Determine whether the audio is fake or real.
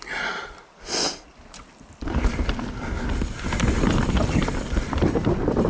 real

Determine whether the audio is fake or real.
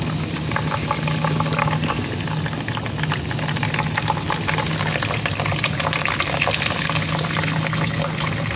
real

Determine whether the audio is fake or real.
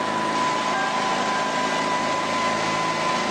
real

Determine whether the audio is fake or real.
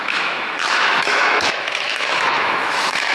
fake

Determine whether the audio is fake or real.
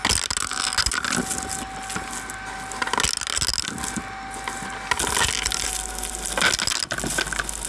real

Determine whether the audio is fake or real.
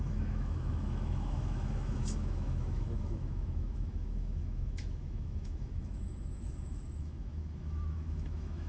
fake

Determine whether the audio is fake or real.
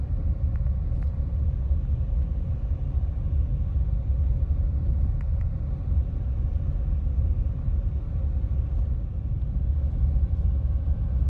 real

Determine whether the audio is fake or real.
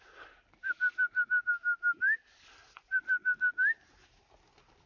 real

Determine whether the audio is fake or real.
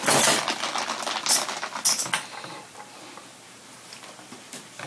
real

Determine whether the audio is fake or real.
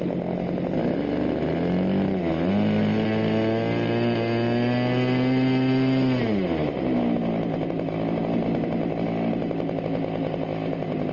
real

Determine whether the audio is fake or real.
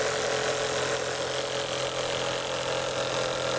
real